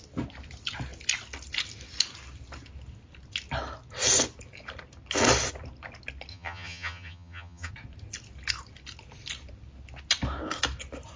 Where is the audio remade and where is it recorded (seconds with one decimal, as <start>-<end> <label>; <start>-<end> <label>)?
0.0-6.3 recorded; 6.3-7.7 remade; 7.7-11.2 recorded